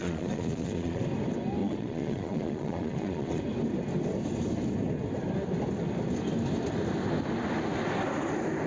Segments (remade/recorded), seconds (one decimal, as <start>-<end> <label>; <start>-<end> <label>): 0.0-1.0 remade; 1.0-1.6 recorded; 1.6-3.4 remade; 3.4-8.7 recorded